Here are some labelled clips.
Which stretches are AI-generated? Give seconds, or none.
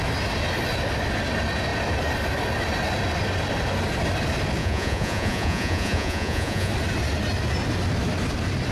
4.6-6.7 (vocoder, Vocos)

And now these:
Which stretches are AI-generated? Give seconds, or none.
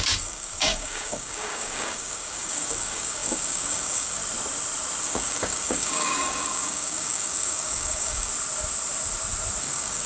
0.0-4.2 (codec, DAC); 5.0-8.3; 9.6-10.1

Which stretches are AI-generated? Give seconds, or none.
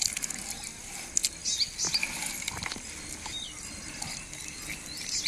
none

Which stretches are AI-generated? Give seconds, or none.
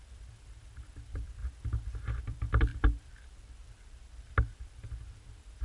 0.0-1.4 (vocoder, BigVGAN v2); 2.2-5.6